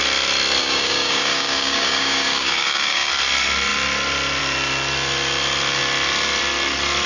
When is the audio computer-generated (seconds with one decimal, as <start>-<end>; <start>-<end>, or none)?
0.6-3.1